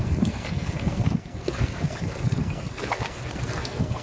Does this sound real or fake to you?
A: fake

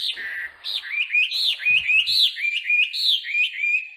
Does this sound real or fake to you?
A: real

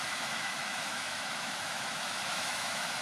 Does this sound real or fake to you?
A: fake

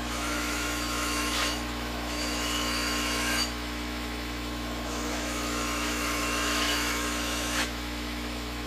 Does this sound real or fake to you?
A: fake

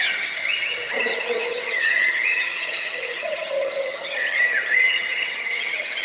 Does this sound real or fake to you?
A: fake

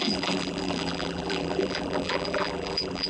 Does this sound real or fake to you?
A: fake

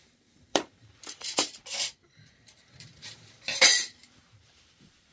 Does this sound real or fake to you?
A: fake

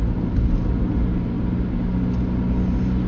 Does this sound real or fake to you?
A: real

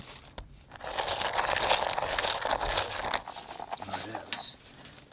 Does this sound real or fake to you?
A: real